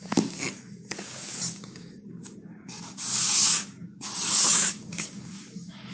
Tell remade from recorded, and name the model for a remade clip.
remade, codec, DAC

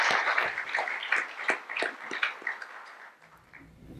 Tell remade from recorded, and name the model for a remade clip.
recorded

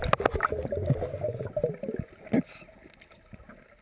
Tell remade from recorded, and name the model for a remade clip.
recorded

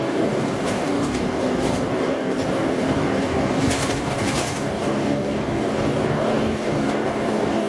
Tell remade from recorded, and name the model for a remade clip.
remade, codec, DAC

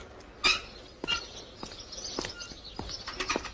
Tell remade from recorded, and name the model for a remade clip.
recorded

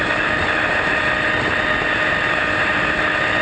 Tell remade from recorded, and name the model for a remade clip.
recorded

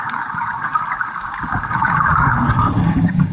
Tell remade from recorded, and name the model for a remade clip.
remade, codec, DAC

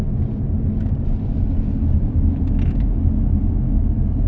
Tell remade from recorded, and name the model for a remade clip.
recorded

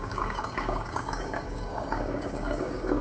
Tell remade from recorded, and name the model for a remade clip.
remade, codec, DAC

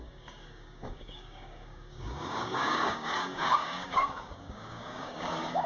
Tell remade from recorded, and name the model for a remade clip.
remade, codec, DAC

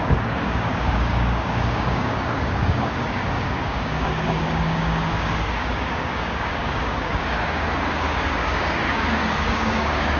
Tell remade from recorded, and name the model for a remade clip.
remade, codec, DAC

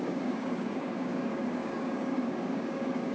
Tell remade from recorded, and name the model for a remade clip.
remade, codec, DAC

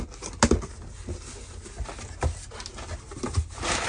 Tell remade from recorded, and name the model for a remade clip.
recorded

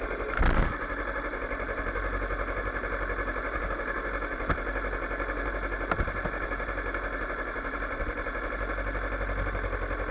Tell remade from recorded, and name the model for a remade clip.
recorded